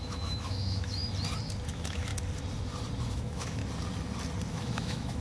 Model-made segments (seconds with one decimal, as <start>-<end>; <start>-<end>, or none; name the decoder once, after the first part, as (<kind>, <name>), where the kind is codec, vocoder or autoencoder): 0.0-1.0 (autoencoder, DAC-VAE); 1.7-2.1; 3.1-3.6; 4.5-5.2